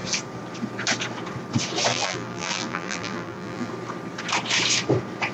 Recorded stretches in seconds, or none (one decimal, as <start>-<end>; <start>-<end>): 0.0-1.9; 3.7-5.3